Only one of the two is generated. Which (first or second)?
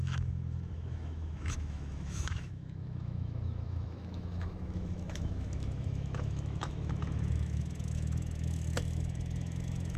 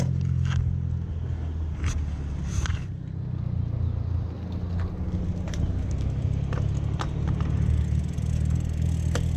first